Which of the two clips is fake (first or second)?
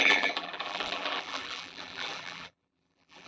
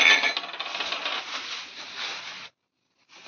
first